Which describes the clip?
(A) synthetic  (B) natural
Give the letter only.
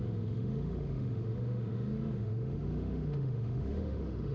A